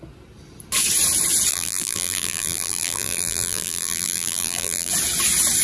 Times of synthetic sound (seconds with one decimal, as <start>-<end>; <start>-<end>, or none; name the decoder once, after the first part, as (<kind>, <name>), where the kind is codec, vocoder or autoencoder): 1.5-4.9 (vocoder, BigVGAN v2)

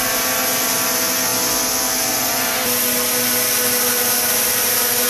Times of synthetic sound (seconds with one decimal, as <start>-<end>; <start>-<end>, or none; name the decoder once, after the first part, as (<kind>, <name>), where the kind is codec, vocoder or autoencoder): none